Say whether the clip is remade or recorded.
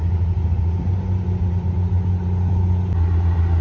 recorded